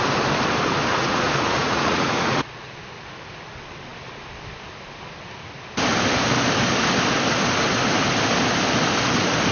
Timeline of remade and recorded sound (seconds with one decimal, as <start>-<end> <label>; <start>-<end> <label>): 0.0-0.9 recorded; 0.9-2.7 remade; 2.7-9.5 recorded